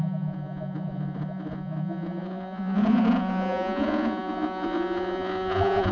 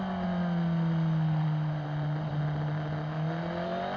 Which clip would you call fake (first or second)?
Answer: first